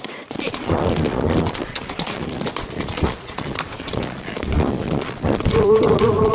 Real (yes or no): no